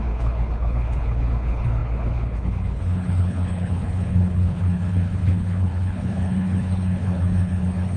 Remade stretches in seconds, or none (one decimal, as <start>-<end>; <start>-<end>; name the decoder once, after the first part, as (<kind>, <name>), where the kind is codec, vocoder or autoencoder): 0.0-8.0 (codec, HILCodec)